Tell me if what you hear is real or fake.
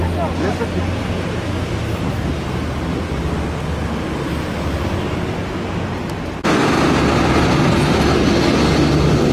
real